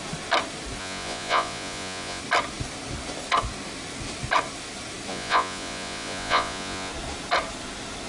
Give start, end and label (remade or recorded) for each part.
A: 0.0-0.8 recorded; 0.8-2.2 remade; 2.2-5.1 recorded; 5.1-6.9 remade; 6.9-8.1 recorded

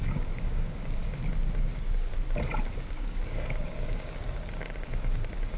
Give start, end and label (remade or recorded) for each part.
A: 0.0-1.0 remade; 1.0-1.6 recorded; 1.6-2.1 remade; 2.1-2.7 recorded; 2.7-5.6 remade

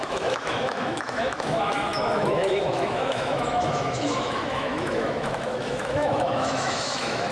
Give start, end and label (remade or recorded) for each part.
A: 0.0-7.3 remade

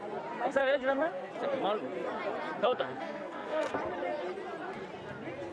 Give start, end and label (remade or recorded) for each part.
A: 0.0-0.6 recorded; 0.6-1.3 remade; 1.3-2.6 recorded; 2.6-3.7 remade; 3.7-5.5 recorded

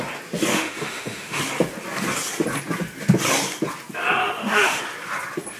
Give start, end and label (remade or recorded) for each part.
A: 0.0-0.5 recorded; 0.5-1.4 remade; 1.4-4.2 recorded; 4.2-4.8 remade; 4.8-5.6 recorded

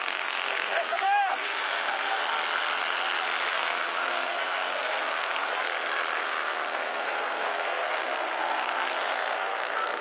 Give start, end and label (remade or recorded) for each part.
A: 0.0-2.2 remade; 2.2-3.5 recorded; 3.5-5.5 remade; 5.5-6.2 recorded; 6.2-10.0 remade

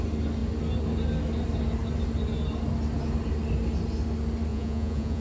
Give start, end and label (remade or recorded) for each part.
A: 0.0-4.5 recorded; 4.5-5.2 remade

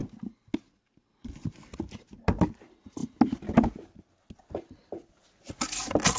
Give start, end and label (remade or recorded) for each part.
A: 0.0-6.2 recorded